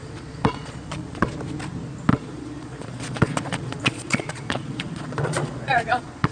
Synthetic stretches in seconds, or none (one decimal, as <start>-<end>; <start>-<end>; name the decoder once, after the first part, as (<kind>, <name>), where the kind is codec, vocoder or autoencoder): 0.0-1.3 (vocoder, Vocos); 2.1-6.3